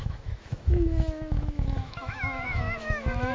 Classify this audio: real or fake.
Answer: fake